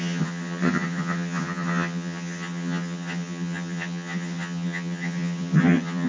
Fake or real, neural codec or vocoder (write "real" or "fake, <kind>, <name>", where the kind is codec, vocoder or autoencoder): fake, vocoder, HiFi-GAN